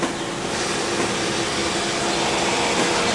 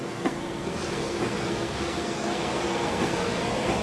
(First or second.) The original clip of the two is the first